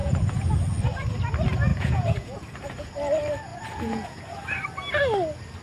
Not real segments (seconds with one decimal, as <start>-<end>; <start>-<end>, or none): 0.0-0.6; 1.7-2.9; 3.5-4.2